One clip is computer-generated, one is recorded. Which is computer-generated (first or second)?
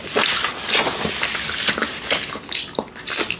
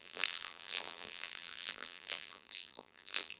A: second